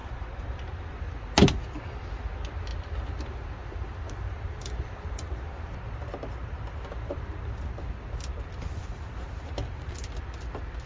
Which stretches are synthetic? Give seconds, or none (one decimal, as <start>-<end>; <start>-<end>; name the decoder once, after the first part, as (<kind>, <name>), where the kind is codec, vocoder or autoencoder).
0.0-1.0 (vocoder, BigVGAN v2)